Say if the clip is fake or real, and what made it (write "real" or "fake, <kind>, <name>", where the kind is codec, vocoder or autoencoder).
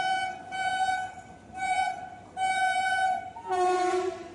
fake, vocoder, BigVGAN v2